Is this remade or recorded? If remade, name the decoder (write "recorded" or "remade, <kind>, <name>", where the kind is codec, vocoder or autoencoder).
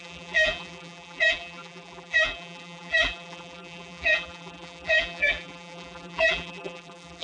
remade, vocoder, BigVGAN v2